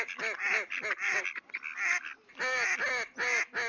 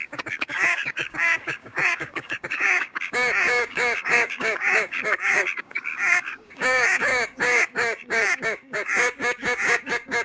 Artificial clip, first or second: second